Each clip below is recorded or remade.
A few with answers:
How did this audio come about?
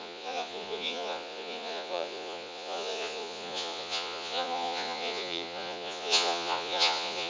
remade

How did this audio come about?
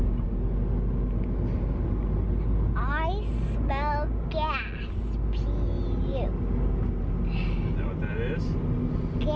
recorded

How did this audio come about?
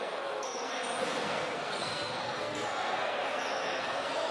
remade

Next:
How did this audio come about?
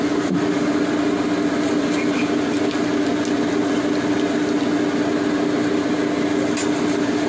recorded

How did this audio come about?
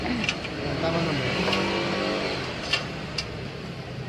recorded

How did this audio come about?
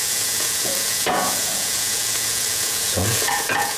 remade